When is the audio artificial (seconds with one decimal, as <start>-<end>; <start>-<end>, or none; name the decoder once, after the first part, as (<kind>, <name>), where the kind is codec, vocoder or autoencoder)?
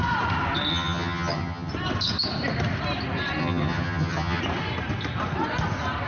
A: 0.7-1.7 (vocoder, HiFi-GAN); 3.4-4.4